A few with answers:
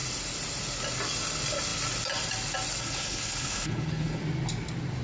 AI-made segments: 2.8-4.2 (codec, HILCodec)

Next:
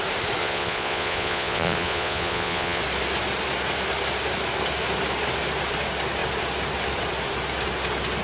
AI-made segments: 0.4-2.8 (vocoder, Vocos)

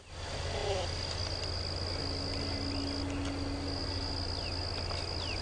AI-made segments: none